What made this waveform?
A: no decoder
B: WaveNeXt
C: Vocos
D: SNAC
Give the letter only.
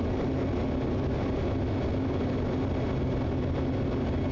A